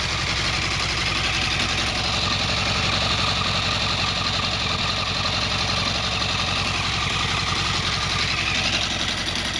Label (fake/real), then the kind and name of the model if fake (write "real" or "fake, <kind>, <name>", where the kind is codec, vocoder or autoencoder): real